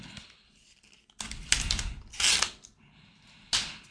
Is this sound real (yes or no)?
yes